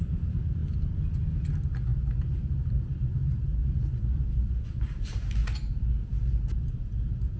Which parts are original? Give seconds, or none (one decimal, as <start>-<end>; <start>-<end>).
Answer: 0.6-1.5